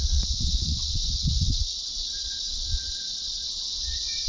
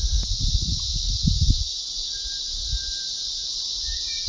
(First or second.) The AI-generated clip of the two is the first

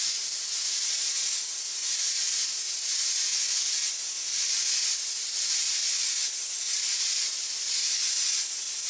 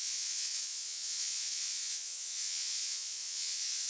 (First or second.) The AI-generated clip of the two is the second